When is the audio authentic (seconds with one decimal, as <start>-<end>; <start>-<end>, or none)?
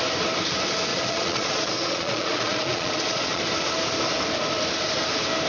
0.0-0.9; 3.4-5.5